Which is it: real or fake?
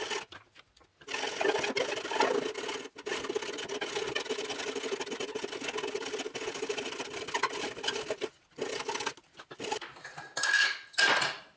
real